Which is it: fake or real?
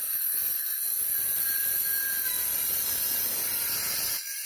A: real